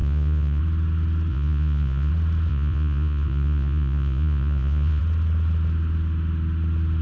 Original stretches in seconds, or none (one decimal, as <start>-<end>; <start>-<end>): 0.6-1.3; 2.1-2.5; 5.0-7.0